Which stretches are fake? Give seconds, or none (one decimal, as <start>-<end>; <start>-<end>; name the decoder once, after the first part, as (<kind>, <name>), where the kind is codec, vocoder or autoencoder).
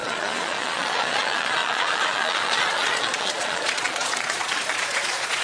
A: 0.0-5.4 (vocoder, Vocos)